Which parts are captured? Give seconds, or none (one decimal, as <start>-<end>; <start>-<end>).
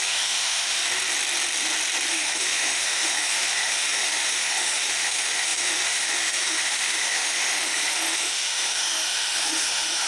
0.8-2.1